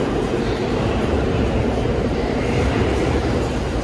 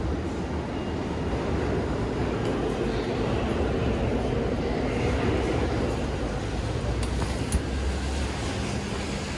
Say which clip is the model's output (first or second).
first